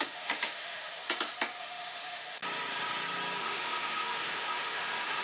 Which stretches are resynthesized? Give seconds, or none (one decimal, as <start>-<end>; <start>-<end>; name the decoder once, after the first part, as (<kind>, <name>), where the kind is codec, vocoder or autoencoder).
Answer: 0.0-1.0 (autoencoder, DAC-VAE); 1.6-2.4; 3.4-5.2